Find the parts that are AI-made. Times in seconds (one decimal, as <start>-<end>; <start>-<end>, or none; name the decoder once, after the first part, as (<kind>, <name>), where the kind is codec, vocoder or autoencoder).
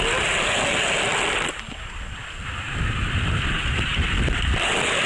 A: none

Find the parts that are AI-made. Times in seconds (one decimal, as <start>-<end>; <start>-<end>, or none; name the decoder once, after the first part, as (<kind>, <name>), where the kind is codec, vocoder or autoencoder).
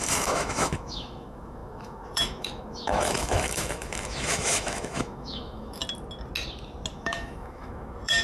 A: 0.0-5.8 (autoencoder, DAC-VAE); 6.9-8.2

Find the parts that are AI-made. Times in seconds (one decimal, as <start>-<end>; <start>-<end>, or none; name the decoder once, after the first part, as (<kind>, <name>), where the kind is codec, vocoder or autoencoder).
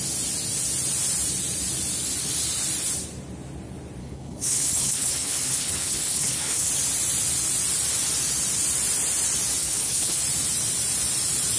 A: 4.0-6.7 (codec, HILCodec); 9.6-10.2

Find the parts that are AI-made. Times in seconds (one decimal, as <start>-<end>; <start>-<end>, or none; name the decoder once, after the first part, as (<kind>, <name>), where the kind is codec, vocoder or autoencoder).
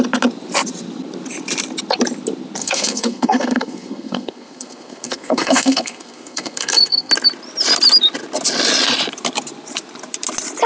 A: 2.6-7.1 (codec, SNAC)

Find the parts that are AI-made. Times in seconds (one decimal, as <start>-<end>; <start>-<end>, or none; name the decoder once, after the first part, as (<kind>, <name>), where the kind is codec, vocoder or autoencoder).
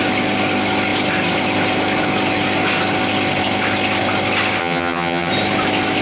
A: 4.6-5.3 (vocoder, HiFi-GAN)